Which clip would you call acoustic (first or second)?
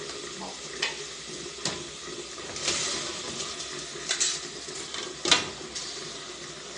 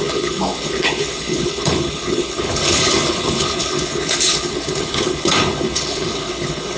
first